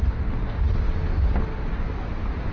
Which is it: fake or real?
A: real